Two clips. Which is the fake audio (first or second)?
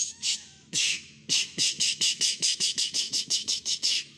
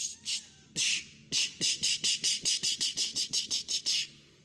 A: first